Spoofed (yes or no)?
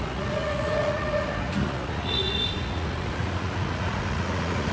yes